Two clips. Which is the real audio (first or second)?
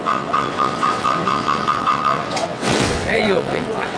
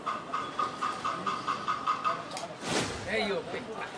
second